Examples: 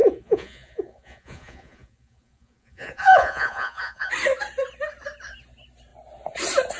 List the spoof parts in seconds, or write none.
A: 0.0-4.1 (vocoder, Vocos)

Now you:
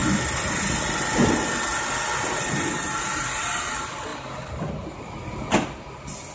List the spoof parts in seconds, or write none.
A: none

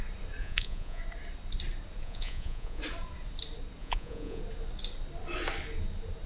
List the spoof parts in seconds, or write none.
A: 0.4-1.0 (vocoder, Vocos); 2.0-2.8; 3.8-4.4

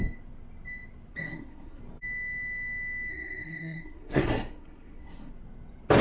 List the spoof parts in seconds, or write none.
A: 1.1-1.8 (codec, SNAC); 3.1-5.3

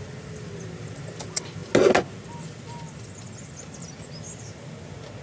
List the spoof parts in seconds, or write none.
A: none

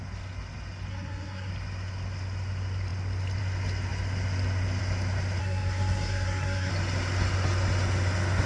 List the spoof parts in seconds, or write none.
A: 0.9-1.5 (codec, SNAC); 5.4-6.7